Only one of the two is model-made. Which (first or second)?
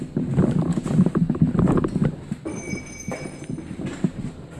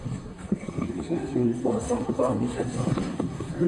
second